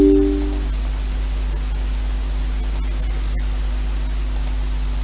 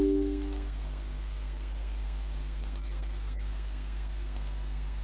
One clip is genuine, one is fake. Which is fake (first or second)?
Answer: second